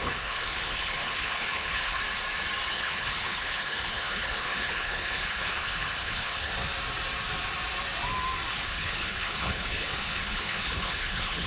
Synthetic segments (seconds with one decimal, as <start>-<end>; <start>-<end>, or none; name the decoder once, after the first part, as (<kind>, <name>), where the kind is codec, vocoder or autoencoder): 0.0-2.0 (codec, HILCodec); 2.7-6.5; 8.5-11.5